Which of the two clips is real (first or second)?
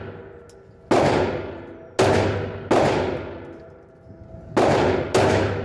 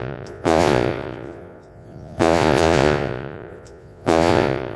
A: first